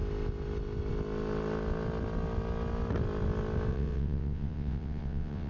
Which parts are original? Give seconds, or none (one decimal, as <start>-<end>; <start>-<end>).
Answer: 0.0-3.7